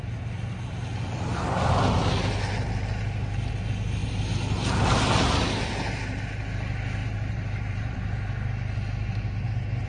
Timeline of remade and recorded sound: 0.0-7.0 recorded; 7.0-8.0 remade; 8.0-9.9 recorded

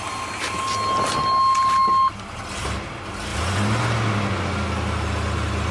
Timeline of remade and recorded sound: 0.0-5.7 recorded